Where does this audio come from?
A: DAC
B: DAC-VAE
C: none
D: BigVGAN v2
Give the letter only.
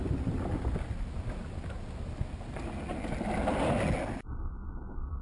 C